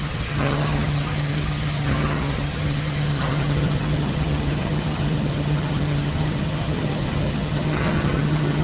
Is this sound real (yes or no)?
no